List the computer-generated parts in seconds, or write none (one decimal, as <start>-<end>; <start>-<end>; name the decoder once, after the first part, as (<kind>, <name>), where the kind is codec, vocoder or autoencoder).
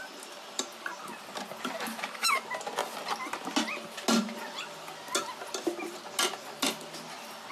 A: 1.9-2.4 (autoencoder, DAC-VAE)